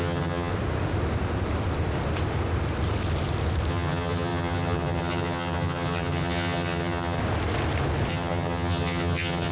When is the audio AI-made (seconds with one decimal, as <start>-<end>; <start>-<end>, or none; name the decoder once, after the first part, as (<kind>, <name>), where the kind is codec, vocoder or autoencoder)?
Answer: 0.0-0.5 (vocoder, HiFi-GAN); 3.7-7.2; 8.1-9.5